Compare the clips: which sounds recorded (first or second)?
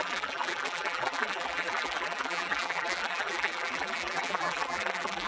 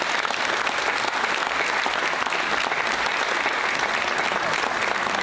second